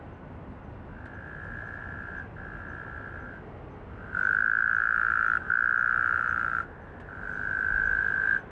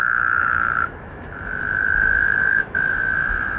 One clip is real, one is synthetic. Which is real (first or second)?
first